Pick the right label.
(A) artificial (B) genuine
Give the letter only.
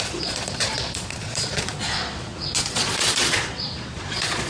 A